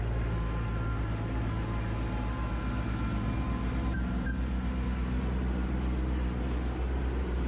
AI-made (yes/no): no